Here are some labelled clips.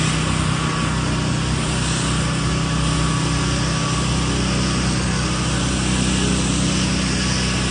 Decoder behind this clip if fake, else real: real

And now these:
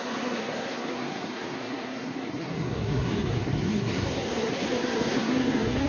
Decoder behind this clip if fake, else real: fake, codec, SNAC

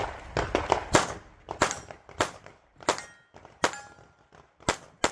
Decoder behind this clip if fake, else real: real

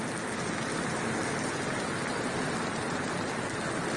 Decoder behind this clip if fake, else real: real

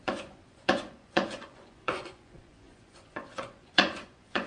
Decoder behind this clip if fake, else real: fake, vocoder, Vocos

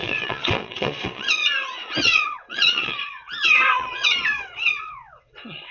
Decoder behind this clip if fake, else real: fake, vocoder, WaveNeXt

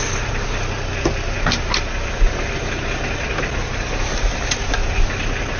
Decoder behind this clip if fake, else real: real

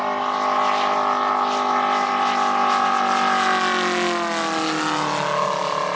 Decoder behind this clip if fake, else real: real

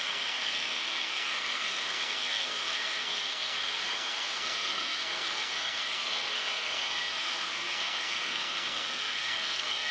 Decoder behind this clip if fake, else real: fake, codec, SNAC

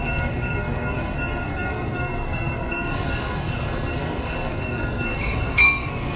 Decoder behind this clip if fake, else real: fake, codec, SNAC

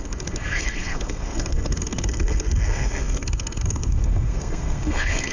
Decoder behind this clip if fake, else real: fake, codec, SNAC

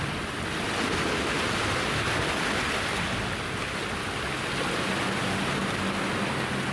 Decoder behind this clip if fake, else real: real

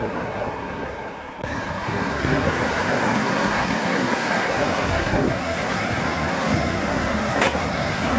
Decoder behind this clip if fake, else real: fake, codec, SNAC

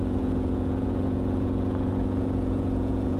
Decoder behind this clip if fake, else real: fake, vocoder, Vocos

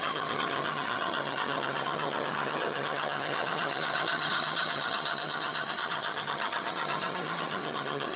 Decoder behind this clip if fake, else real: fake, vocoder, HiFi-GAN